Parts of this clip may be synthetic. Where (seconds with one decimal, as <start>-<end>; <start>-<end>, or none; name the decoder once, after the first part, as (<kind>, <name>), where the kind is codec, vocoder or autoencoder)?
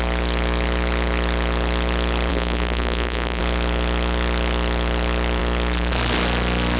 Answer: 2.3-3.4 (codec, SNAC)